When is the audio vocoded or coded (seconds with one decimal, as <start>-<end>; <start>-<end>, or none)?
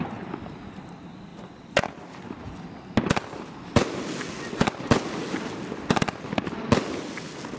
none